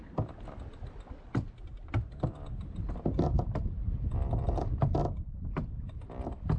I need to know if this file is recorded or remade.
recorded